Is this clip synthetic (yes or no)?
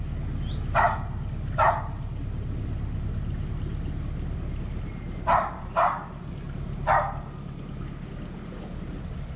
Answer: no